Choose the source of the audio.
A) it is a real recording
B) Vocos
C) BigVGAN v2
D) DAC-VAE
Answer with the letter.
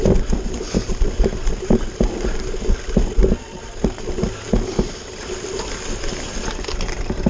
A